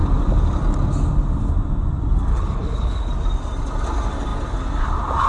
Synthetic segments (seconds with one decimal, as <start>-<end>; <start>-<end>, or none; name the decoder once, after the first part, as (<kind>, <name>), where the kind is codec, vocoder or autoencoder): 2.3-3.1 (codec, HILCodec)